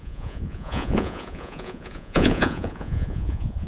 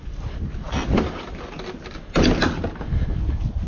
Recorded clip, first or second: second